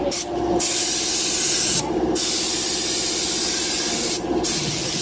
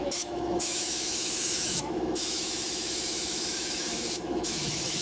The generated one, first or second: second